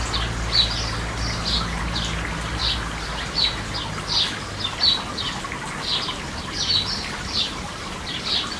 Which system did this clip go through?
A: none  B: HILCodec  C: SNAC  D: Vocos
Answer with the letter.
A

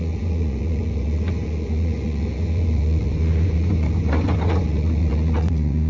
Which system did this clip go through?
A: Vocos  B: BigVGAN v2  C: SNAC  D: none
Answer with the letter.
A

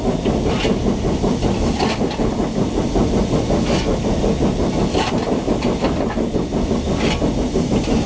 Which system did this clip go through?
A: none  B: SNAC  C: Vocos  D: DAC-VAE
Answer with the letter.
A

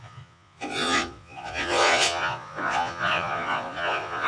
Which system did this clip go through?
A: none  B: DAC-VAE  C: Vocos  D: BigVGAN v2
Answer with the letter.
C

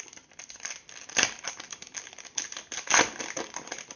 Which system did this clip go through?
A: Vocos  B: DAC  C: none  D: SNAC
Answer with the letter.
C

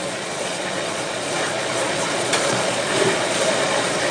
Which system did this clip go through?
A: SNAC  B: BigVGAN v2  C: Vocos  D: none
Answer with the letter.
C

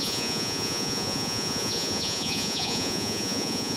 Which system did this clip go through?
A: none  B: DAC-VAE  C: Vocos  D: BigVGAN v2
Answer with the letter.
C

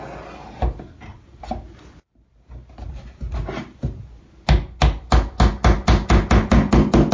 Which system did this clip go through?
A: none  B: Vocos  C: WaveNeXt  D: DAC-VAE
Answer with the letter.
A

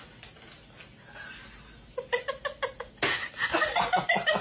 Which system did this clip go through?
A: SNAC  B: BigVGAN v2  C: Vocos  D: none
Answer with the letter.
D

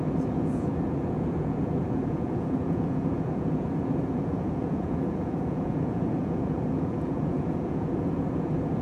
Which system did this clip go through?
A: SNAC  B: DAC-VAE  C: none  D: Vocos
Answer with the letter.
D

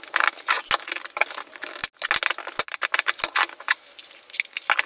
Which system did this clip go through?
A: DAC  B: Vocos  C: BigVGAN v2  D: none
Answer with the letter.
D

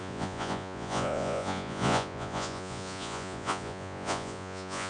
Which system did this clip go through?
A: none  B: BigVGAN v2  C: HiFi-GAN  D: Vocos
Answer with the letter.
D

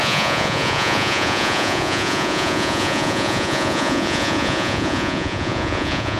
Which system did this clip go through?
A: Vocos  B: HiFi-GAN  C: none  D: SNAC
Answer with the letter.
A